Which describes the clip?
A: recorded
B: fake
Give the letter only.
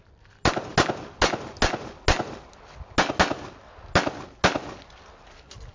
A